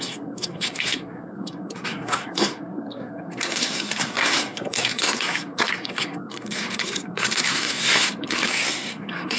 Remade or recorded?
remade